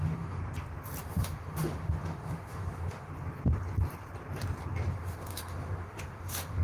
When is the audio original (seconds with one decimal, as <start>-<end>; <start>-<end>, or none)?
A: 0.4-1.0; 3.1-4.9